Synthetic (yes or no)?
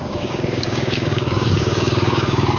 yes